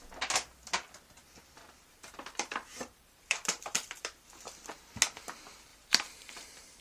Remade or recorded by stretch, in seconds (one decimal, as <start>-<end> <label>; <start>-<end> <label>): 0.0-1.2 recorded; 1.2-4.4 remade; 4.4-5.7 recorded; 5.7-6.8 remade

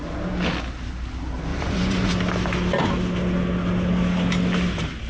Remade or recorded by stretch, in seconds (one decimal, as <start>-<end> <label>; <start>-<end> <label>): 0.0-1.5 recorded; 1.5-2.1 remade; 2.1-5.1 recorded

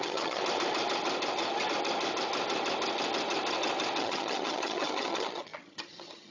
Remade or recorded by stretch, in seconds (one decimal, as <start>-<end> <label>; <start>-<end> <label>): 0.0-0.4 remade; 0.4-4.0 recorded; 4.0-6.3 remade

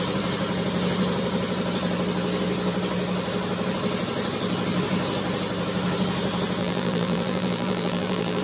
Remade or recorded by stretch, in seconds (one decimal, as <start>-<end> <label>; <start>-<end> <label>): 0.0-6.6 recorded; 6.6-8.4 remade

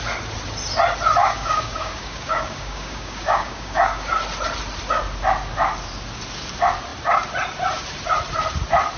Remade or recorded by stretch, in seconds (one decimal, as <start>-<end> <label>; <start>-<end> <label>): 0.0-1.2 recorded; 1.2-4.1 remade; 4.1-9.0 recorded

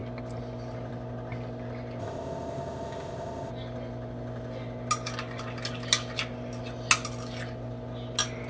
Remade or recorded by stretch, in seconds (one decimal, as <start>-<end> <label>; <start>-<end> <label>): 0.0-2.0 recorded; 2.0-3.5 remade; 3.5-8.5 recorded

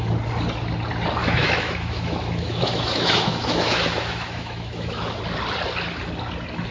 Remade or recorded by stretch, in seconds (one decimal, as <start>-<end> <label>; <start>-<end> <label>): 0.0-1.2 recorded; 1.2-5.2 remade; 5.2-6.7 recorded